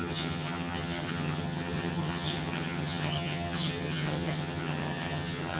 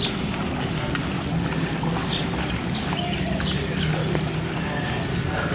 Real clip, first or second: second